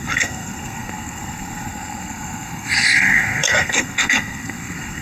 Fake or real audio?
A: fake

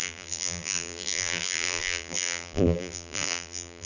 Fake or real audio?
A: fake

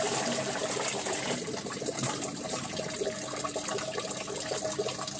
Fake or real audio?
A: real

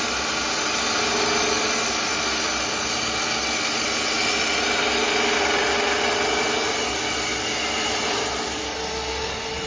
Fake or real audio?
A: real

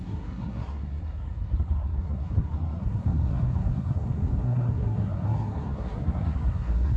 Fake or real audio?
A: fake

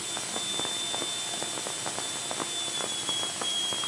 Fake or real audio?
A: real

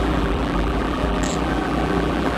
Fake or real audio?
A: fake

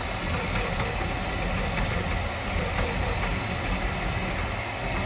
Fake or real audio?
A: real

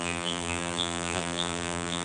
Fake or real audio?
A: fake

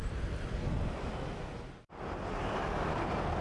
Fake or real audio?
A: real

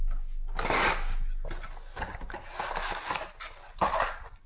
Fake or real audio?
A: real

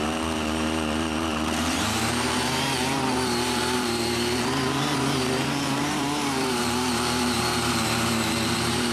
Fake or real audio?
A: fake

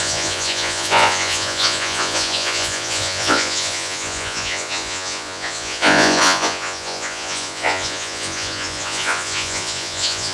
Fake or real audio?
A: fake